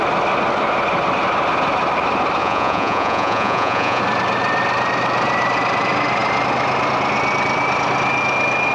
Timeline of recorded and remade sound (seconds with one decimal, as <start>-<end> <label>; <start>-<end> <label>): 0.0-2.4 recorded; 2.4-4.0 remade; 4.0-8.7 recorded